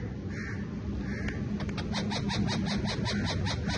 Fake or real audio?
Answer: real